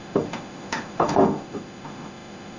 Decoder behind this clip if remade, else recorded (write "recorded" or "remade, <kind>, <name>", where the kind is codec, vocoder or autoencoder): remade, autoencoder, DAC-VAE